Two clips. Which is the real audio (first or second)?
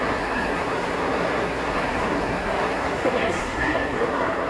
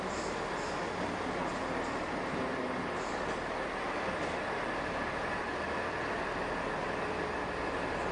second